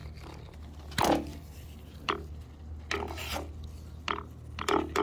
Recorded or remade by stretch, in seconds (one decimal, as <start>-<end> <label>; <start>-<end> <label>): 0.0-0.6 remade; 0.6-1.3 recorded; 1.3-2.1 remade; 2.1-5.0 recorded